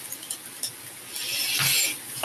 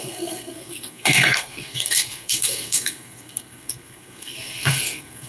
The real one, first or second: first